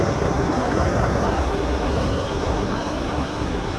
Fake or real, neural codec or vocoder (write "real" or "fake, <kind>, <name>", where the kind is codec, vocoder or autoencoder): fake, codec, SNAC